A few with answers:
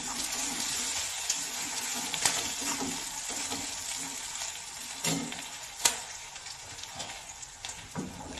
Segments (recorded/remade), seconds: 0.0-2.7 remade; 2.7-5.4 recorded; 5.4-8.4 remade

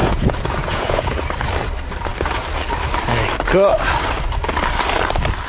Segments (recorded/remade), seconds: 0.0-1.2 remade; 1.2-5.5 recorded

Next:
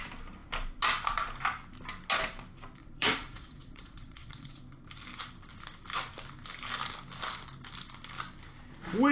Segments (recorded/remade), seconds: 0.0-2.8 recorded; 2.8-4.6 remade; 4.6-9.1 recorded

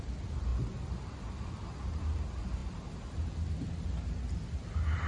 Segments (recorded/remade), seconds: 0.0-5.1 recorded

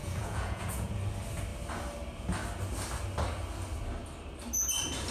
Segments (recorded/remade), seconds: 0.0-1.0 remade; 1.0-5.1 recorded

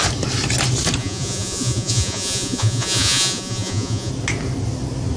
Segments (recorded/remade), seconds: 0.0-1.0 recorded; 1.0-4.1 remade; 4.1-5.2 recorded

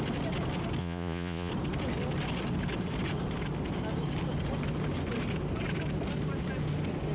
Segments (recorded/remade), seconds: 0.0-0.8 recorded; 0.8-1.5 remade; 1.5-7.1 recorded

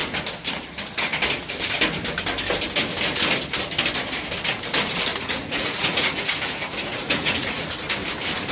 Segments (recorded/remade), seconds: 0.0-5.1 recorded; 5.1-6.4 remade; 6.4-6.9 recorded; 6.9-7.7 remade; 7.7-8.5 recorded